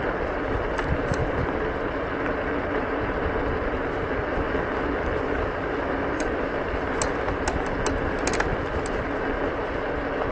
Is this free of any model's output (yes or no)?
yes